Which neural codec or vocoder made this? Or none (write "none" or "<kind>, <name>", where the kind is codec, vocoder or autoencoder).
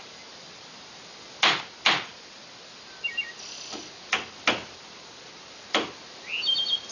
none